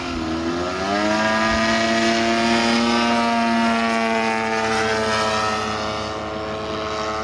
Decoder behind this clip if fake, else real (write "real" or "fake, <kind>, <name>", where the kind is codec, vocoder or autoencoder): real